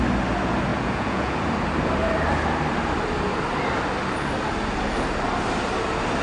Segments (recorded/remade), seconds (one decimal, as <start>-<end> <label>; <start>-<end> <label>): 0.0-0.7 recorded; 0.7-1.4 remade; 1.4-6.2 recorded